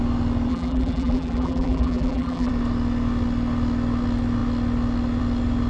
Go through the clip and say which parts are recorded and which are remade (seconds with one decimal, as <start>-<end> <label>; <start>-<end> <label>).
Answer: 0.0-0.5 recorded; 0.5-2.5 remade; 2.5-5.7 recorded